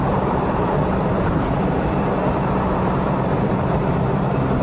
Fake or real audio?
fake